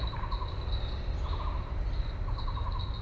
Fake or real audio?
real